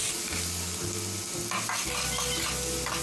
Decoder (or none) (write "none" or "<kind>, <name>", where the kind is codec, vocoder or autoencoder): none